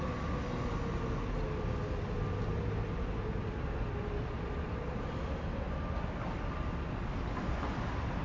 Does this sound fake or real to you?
real